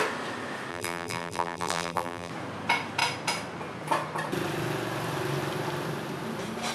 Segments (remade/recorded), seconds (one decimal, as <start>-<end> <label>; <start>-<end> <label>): 0.0-0.7 recorded; 0.7-2.3 remade; 2.3-6.7 recorded